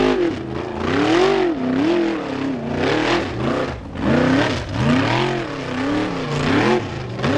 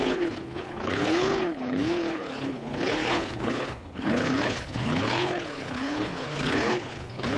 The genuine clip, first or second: first